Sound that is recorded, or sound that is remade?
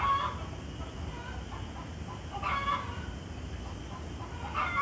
recorded